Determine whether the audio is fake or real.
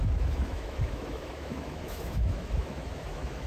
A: fake